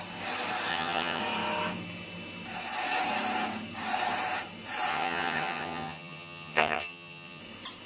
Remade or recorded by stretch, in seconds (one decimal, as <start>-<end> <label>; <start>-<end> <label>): 0.0-0.7 recorded; 0.7-1.2 remade; 1.2-4.9 recorded; 4.9-7.4 remade; 7.4-7.9 recorded

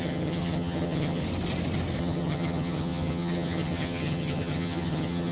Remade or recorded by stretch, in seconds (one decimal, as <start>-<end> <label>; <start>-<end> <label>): 0.0-1.2 remade; 1.2-2.0 recorded; 2.0-5.3 remade

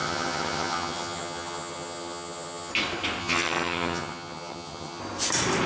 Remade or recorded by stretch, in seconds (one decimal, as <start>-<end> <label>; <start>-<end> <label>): 0.0-2.7 remade; 2.7-3.2 recorded; 3.2-5.0 remade; 5.0-5.7 recorded